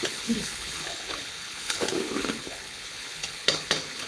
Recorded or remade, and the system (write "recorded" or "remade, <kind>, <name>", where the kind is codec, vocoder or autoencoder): remade, codec, HILCodec